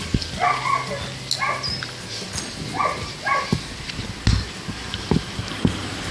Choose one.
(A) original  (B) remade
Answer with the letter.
A